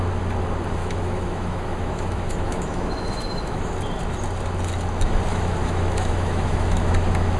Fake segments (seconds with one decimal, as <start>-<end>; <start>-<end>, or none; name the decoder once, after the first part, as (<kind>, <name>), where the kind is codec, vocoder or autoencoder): 0.8-3.7 (autoencoder, DAC-VAE); 5.3-6.9